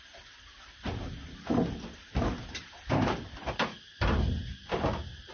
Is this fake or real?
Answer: real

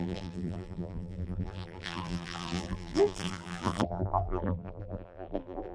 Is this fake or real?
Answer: fake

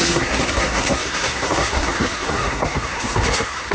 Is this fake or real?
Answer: fake